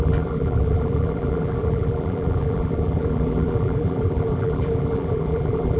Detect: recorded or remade remade